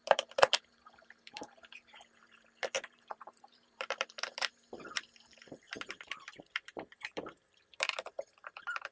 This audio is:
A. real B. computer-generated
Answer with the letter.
B